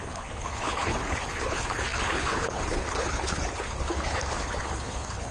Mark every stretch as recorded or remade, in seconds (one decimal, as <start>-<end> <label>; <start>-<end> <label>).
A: 0.0-5.3 remade